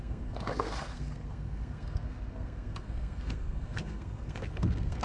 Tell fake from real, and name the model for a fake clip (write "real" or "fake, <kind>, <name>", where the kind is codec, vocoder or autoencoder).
fake, codec, SNAC